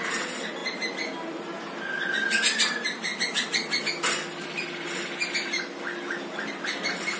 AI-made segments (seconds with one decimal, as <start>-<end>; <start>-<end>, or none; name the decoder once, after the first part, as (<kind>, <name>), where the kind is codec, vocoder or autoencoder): none